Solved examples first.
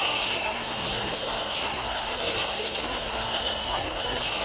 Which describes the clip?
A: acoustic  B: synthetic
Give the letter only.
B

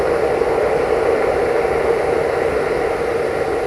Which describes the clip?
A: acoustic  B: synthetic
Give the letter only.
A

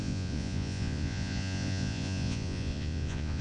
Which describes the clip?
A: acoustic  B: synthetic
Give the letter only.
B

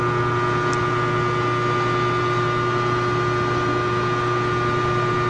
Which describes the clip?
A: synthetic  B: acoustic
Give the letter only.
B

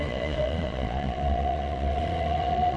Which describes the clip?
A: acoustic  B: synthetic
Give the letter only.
B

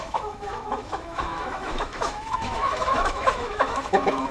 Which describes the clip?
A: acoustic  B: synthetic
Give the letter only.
B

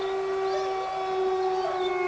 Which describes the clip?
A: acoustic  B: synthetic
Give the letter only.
A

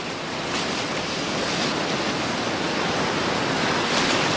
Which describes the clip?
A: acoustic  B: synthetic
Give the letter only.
A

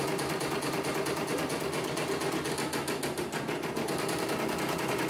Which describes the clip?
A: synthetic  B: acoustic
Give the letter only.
B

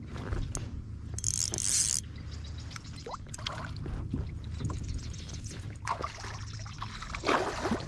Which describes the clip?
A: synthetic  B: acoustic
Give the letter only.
B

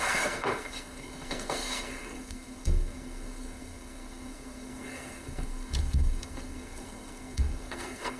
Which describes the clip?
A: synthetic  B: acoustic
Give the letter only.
A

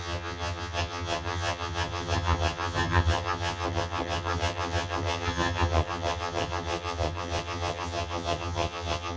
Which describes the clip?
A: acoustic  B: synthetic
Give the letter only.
B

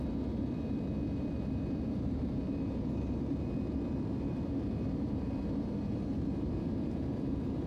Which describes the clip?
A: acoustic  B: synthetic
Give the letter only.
B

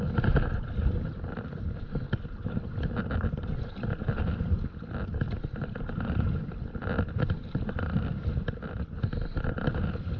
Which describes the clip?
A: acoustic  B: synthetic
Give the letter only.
A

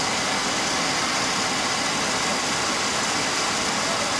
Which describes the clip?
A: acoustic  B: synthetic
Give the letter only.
A